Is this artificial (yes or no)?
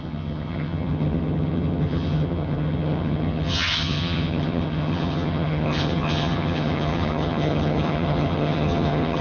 yes